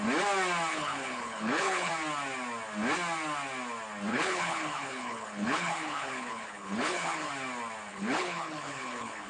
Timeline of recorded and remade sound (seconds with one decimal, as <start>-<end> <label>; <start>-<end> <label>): 0.0-0.7 recorded; 0.7-1.9 remade; 1.9-4.1 recorded; 4.1-7.3 remade; 7.3-7.9 recorded; 7.9-9.3 remade